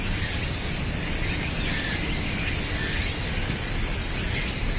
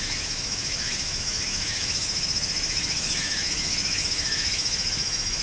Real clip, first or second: first